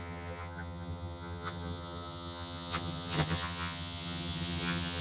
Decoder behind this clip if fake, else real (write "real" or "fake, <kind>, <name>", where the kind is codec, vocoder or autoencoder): fake, vocoder, HiFi-GAN